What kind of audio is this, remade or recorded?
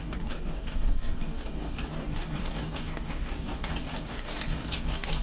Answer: remade